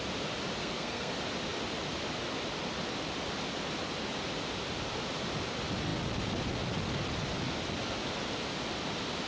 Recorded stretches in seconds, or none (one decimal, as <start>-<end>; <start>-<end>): 0.0-0.6; 1.1-9.3